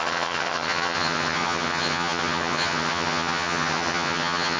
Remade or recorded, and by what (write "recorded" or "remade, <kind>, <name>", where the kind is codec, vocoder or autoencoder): remade, vocoder, HiFi-GAN